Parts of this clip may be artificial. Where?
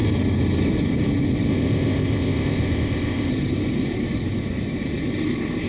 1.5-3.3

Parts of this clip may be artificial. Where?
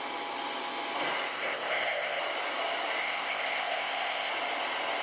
1.3-2.2; 3.0-4.3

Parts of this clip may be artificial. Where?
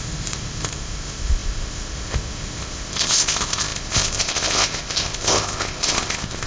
0.0-6.5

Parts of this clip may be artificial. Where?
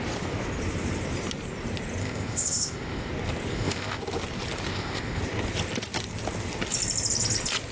2.0-3.1; 3.5-4.0; 4.7-5.2